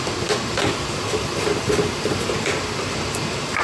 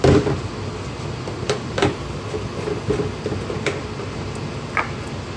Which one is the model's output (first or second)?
first